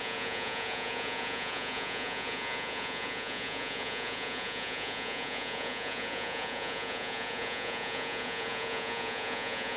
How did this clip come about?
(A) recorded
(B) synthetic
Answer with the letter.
B